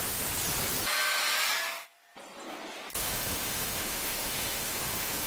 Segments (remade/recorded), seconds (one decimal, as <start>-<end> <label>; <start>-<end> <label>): 0.0-3.0 recorded; 3.0-5.3 remade

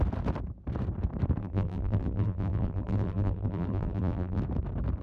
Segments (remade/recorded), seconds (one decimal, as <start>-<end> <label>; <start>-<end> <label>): 0.0-1.4 recorded; 1.4-4.4 remade; 4.4-5.0 recorded

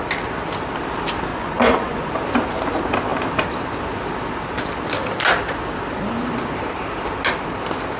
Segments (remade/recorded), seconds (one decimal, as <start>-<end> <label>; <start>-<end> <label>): 0.0-1.3 recorded; 1.3-2.1 remade; 2.1-8.0 recorded

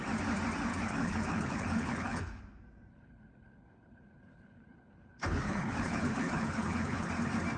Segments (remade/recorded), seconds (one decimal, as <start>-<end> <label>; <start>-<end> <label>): 0.0-0.7 recorded; 0.7-2.4 remade; 2.4-2.9 recorded; 2.9-7.1 remade; 7.1-7.6 recorded

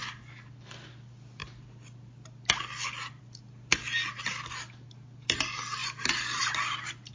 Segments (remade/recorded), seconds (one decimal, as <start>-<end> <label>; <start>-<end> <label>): 0.0-5.8 recorded; 5.8-6.4 remade; 6.4-7.1 recorded

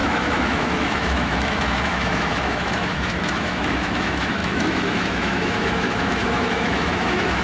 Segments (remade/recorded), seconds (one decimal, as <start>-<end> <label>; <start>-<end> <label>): 0.0-7.4 remade

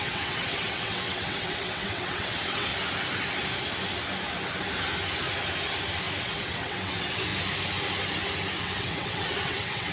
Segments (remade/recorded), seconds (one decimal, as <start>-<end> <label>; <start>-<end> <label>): 0.0-2.7 remade; 2.7-6.2 recorded; 6.2-7.3 remade; 7.3-8.6 recorded; 8.6-9.9 remade